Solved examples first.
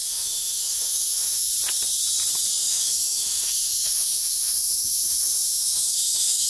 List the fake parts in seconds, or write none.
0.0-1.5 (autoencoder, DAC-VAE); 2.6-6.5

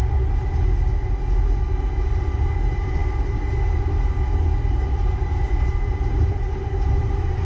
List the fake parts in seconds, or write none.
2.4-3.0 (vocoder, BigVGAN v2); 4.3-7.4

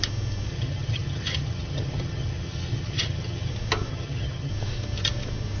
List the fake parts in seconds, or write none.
0.5-3.5 (vocoder, HiFi-GAN); 3.9-4.5

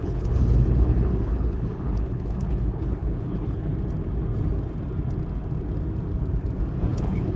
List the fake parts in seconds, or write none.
0.0-3.7 (codec, HILCodec); 6.9-7.4

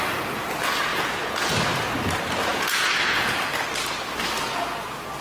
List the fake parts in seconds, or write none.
0.9-1.5 (vocoder, Vocos); 2.5-3.4